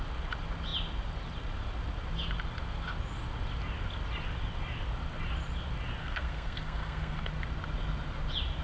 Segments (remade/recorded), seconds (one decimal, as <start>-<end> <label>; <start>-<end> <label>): 0.0-6.0 recorded; 6.0-7.3 remade; 7.3-8.6 recorded